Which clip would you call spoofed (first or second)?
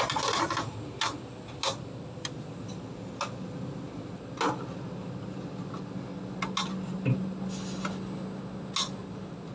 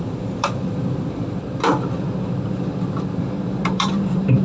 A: second